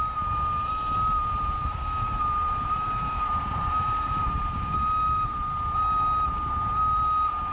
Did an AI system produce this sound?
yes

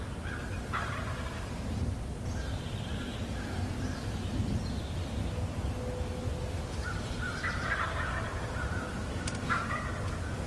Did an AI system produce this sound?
no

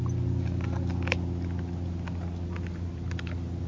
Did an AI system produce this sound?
no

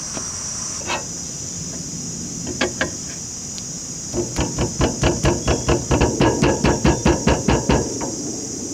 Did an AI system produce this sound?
no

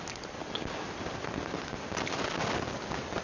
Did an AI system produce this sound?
no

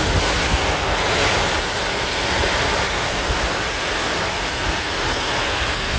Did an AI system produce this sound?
no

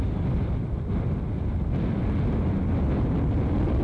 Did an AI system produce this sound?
no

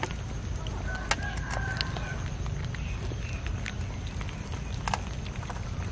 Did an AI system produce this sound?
no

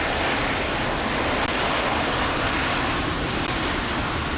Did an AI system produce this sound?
no